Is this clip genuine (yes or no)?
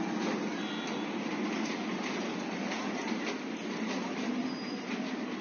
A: yes